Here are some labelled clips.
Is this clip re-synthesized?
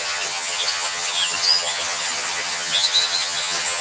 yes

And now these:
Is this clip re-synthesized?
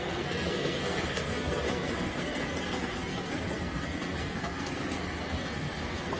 yes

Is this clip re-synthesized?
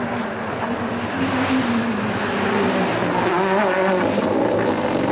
no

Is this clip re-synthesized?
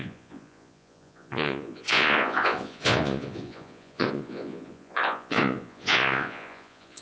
yes